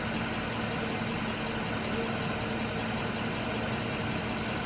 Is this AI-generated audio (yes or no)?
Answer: no